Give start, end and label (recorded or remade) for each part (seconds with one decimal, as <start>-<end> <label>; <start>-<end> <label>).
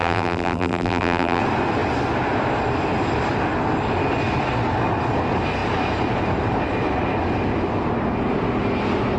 0.0-1.4 remade; 1.4-9.2 recorded